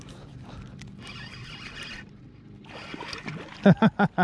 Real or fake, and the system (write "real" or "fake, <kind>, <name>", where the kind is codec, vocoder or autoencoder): real